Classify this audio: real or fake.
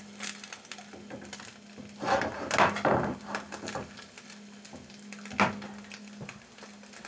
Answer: real